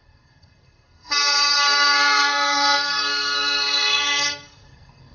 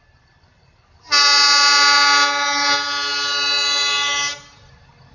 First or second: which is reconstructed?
first